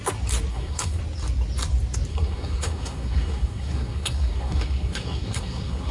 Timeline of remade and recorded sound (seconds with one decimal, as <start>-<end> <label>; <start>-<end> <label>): 0.0-0.5 recorded; 0.5-1.0 remade; 1.0-2.1 recorded; 2.1-5.9 remade